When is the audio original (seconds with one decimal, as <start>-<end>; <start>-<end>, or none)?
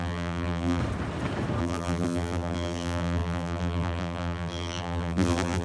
0.8-1.6